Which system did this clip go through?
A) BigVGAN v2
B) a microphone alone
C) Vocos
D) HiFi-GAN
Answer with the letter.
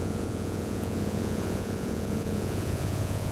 C